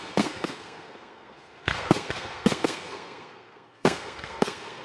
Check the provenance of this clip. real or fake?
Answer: fake